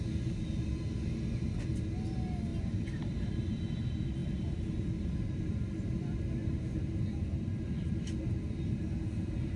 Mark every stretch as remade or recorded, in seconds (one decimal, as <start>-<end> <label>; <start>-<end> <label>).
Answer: 0.0-2.5 recorded; 2.5-3.6 remade; 3.6-9.6 recorded